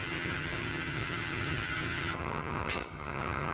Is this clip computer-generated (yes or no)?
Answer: yes